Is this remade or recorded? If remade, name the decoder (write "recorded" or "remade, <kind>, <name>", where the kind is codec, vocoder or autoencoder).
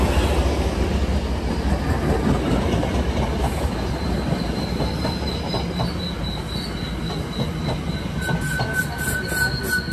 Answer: recorded